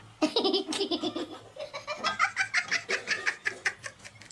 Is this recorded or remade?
recorded